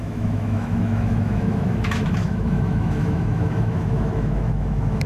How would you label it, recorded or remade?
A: remade